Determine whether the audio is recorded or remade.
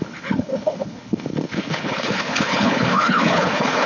remade